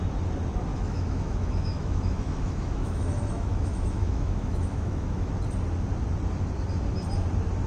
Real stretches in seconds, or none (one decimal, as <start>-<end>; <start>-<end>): 0.0-0.7; 5.3-7.7

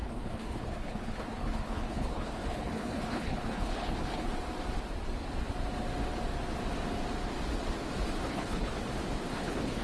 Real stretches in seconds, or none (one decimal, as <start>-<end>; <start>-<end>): 4.3-8.2; 8.7-9.3

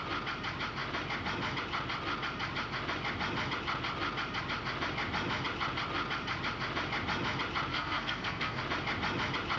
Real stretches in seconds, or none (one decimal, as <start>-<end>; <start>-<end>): 0.0-7.7; 8.6-9.6

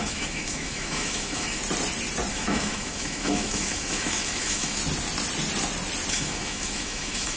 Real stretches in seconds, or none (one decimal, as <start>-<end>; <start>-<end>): 1.6-2.3; 4.8-6.1

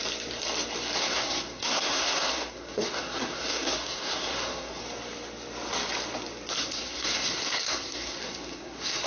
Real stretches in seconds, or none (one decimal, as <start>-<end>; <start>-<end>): 0.0-1.0; 4.8-6.6

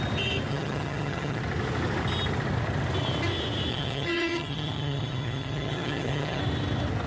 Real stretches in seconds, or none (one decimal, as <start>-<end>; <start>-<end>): 0.0-0.5; 1.4-3.7; 6.4-7.1